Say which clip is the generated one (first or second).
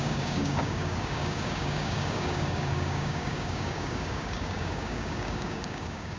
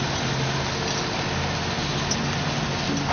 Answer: first